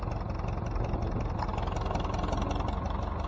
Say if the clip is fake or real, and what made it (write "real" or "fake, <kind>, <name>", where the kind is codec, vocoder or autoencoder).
real